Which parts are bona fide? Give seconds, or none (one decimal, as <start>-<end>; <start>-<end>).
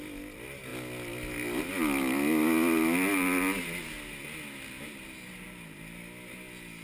0.0-6.8